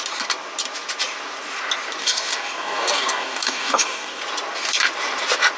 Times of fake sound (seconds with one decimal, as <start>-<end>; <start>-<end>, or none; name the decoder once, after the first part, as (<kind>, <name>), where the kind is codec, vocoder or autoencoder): 2.0-4.2 (codec, DAC)